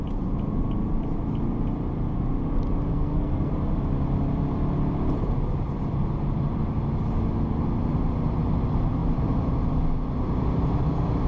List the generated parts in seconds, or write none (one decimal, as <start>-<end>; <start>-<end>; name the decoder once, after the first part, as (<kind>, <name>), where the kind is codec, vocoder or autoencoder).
2.9-3.5 (codec, SNAC)